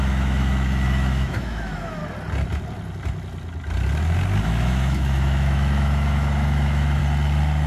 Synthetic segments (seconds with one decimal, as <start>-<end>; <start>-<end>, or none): 0.0-2.0; 4.4-7.0